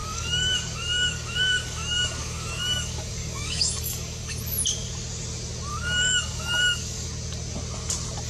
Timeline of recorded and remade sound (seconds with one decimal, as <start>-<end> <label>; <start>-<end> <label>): 0.0-4.4 remade; 4.4-5.7 recorded; 5.7-7.1 remade; 7.1-8.3 recorded